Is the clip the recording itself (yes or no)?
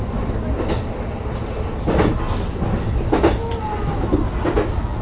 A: yes